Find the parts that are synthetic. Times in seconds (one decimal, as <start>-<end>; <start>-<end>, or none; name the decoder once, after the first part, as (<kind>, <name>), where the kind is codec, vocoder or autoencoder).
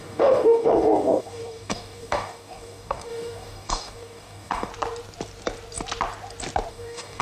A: 0.0-4.7 (codec, DAC); 6.7-7.2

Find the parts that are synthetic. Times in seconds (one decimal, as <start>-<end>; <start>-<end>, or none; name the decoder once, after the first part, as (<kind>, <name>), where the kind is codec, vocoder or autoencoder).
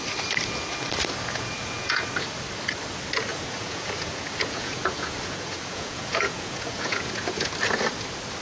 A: 1.2-2.1 (vocoder, Vocos); 3.3-7.5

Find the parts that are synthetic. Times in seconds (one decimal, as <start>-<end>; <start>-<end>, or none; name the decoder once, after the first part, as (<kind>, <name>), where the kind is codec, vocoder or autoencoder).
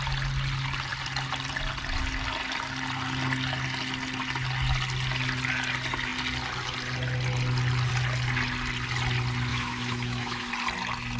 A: 9.5-10.5 (autoencoder, DAC-VAE)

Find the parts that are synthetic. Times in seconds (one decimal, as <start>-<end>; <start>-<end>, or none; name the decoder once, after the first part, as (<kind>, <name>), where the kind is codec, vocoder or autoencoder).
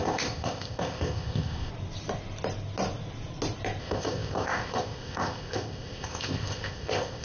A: 0.0-1.7 (codec, ZipCodec); 3.8-7.2